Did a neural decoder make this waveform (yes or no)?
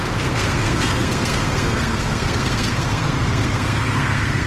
yes